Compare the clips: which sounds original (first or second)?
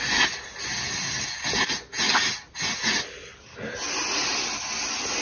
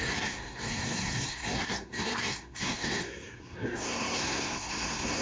first